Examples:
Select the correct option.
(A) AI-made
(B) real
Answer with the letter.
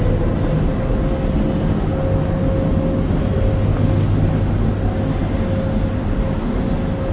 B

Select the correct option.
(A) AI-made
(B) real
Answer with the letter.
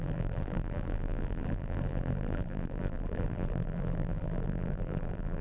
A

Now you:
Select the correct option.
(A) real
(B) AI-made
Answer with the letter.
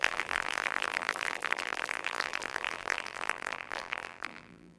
B